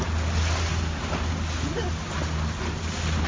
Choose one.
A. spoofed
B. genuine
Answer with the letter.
B